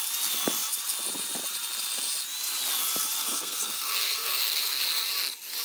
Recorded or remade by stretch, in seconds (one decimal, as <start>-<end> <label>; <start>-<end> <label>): 0.0-3.2 recorded; 3.2-4.8 remade; 4.8-5.6 recorded